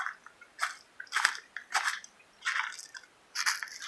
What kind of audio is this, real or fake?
real